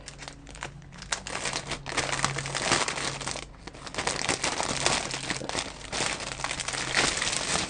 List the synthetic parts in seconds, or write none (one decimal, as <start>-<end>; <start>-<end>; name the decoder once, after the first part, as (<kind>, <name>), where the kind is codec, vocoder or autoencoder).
0.4-1.0 (codec, HILCodec)